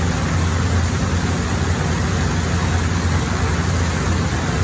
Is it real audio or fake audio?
real